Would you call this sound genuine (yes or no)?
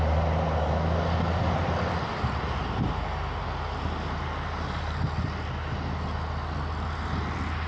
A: yes